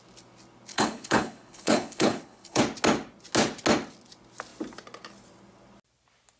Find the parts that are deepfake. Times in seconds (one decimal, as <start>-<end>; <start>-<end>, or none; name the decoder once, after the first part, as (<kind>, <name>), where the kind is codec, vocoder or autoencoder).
0.7-2.6 (codec, HILCodec)